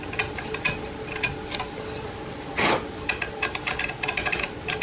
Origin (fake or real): real